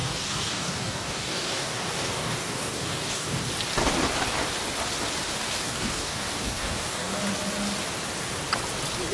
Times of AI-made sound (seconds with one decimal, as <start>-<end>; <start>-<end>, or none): 0.0-3.4; 5.4-7.2